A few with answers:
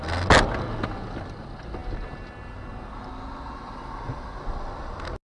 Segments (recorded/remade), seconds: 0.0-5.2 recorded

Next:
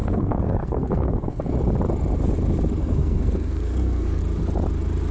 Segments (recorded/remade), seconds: 0.0-1.5 remade; 1.5-2.8 recorded; 2.8-4.2 remade; 4.2-5.1 recorded